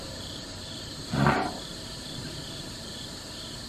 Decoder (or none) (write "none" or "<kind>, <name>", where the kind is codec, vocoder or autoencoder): vocoder, BigVGAN v2